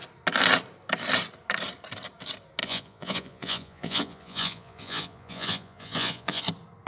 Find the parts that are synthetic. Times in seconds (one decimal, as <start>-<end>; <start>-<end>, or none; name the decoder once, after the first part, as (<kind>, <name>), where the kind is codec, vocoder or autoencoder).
2.6-6.4 (vocoder, Vocos)